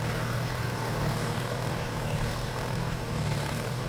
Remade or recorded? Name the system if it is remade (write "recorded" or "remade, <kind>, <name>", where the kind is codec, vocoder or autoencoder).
remade, codec, DAC